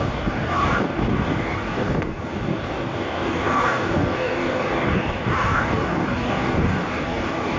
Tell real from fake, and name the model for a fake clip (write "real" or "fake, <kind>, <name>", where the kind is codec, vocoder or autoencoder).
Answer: fake, codec, DAC